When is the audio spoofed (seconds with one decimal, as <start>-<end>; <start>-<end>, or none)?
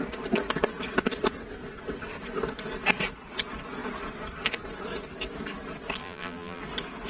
6.0-6.6